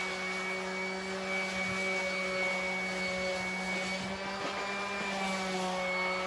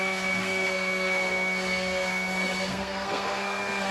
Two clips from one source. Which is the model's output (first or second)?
second